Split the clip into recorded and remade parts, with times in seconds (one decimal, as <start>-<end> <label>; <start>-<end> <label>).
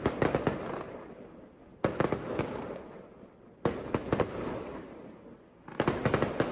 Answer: 0.0-6.5 recorded